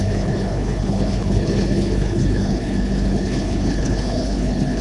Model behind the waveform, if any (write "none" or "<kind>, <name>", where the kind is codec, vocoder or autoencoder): codec, HILCodec